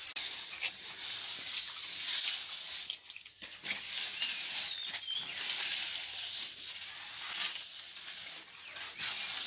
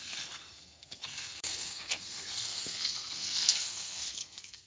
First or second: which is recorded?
first